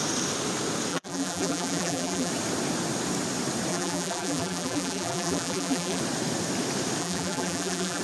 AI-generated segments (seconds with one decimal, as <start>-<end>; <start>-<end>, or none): 0.9-2.3; 3.7-6.0; 7.0-8.0